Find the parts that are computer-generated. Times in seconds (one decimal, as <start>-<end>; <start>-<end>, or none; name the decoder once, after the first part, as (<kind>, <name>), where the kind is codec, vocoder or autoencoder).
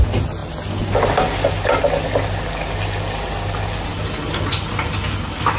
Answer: none